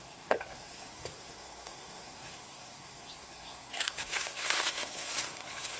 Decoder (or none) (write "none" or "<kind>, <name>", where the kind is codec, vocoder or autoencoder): codec, SNAC